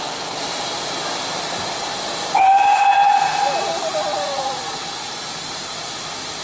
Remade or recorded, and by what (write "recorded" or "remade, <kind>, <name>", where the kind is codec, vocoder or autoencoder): recorded